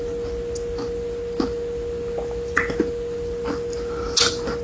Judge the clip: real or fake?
real